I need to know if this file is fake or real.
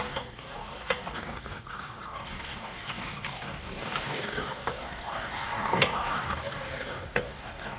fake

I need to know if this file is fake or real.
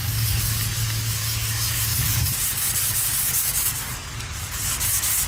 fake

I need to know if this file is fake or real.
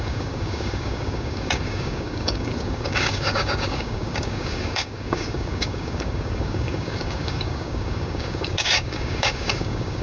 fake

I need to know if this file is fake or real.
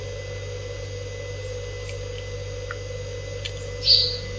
real